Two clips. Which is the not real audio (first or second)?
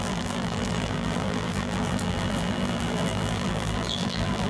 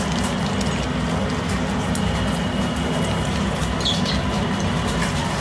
first